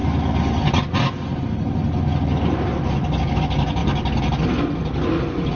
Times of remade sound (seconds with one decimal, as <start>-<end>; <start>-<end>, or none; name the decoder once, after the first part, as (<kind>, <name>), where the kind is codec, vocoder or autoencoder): none